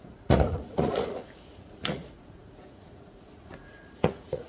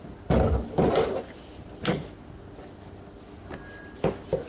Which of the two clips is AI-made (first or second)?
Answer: first